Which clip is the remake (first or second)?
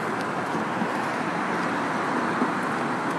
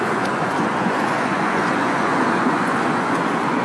second